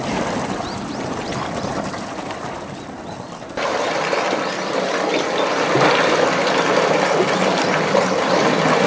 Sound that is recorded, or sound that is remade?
recorded